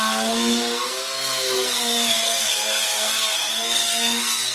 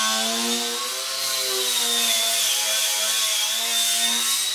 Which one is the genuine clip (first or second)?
second